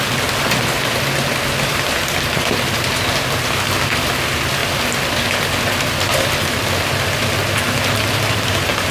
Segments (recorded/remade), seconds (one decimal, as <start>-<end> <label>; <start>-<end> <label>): 0.0-8.9 recorded